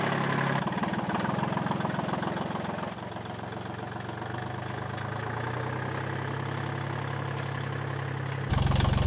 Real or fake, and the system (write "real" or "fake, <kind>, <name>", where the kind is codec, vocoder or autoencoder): real